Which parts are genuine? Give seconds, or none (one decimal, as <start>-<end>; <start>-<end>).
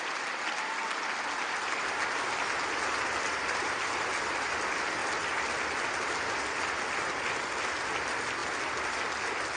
0.0-9.6